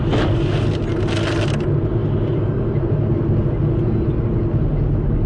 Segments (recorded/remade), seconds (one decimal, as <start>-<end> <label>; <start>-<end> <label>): 0.0-5.3 recorded